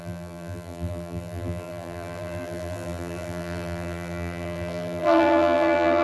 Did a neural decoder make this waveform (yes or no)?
yes